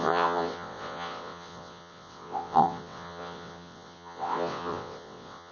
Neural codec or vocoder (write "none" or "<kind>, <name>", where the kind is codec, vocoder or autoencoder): vocoder, WaveNeXt